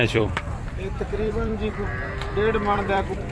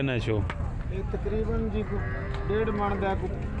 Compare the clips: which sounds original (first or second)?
second